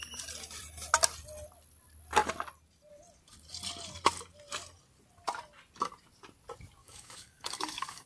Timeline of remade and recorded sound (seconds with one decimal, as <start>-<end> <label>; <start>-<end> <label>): 0.0-6.8 recorded; 6.8-8.1 remade